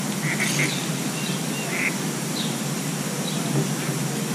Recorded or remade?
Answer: recorded